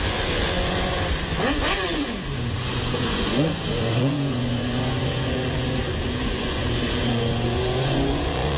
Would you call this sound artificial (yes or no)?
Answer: yes